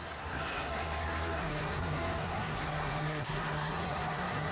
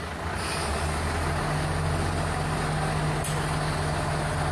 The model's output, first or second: first